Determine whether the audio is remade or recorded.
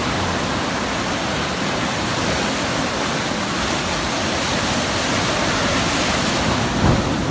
recorded